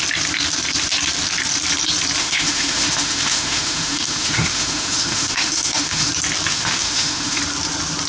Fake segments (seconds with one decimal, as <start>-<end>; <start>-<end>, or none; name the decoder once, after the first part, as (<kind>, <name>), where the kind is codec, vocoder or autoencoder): 2.2-6.1 (autoencoder, DAC-VAE); 6.5-7.4